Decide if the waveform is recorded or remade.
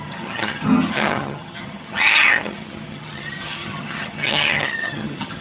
remade